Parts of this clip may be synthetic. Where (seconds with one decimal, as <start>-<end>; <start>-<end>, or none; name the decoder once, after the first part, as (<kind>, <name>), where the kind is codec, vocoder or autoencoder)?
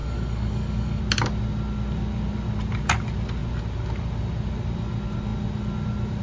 0.0-1.0 (codec, DAC)